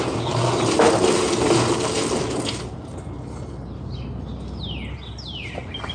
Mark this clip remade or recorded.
recorded